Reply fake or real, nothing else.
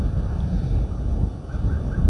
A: real